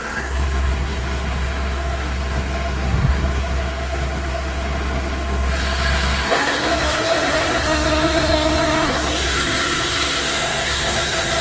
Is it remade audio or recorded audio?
remade